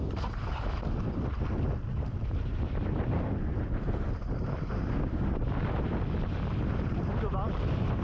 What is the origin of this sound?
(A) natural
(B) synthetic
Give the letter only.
A